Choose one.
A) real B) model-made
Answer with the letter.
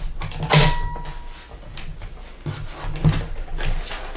A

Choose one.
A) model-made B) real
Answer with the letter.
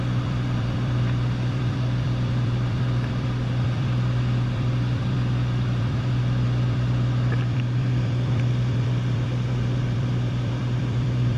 A